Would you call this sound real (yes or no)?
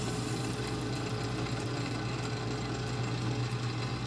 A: yes